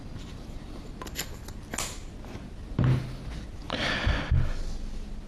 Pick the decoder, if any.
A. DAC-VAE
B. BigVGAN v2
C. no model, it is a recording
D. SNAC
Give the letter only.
C